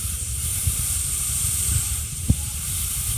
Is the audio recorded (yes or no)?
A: no